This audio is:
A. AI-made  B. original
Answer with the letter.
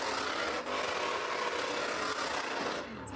B